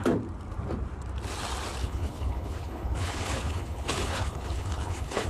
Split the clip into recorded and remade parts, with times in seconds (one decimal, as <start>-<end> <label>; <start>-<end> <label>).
0.0-1.8 recorded; 1.8-5.3 remade